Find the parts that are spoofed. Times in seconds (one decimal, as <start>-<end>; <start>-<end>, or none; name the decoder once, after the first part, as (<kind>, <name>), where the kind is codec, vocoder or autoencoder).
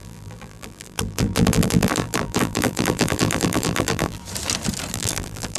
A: 0.0-4.2 (vocoder, BigVGAN v2); 4.9-5.6